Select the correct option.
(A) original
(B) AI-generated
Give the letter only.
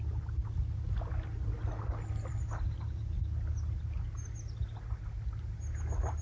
A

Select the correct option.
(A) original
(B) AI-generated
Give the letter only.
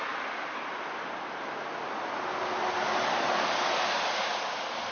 A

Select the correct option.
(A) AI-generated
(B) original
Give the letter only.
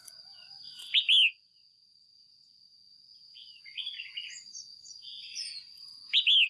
B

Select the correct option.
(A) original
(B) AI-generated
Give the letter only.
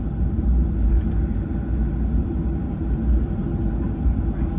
A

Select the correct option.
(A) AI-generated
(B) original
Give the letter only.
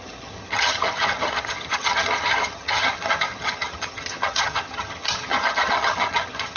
A